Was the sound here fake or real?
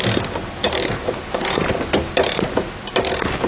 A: real